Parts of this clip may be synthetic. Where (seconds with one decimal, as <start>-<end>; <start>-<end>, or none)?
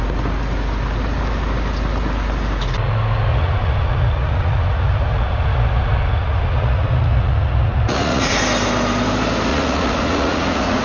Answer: 3.3-8.4; 9.5-10.8